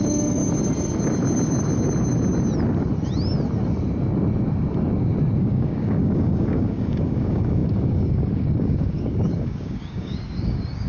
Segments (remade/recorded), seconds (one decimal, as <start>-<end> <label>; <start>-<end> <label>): 0.0-0.4 remade; 0.4-5.4 recorded; 5.4-10.9 remade